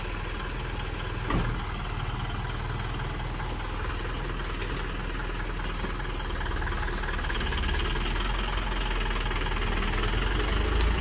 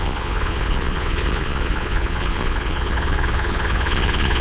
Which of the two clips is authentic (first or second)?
first